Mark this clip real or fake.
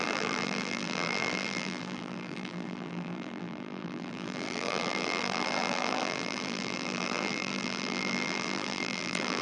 fake